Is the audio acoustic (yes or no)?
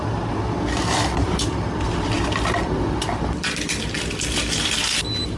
no